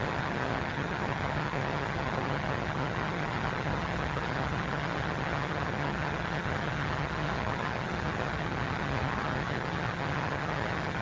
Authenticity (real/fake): fake